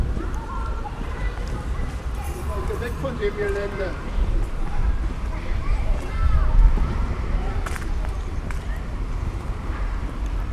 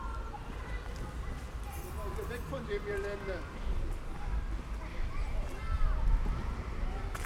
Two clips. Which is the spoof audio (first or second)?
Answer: first